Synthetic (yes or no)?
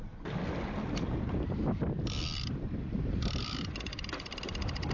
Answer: no